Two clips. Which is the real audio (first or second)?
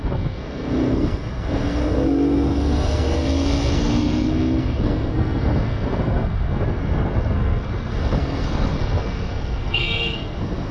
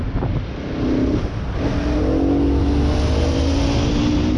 second